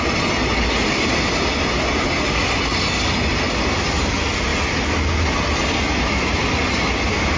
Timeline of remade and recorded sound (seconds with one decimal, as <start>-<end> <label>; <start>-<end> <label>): 0.0-7.4 recorded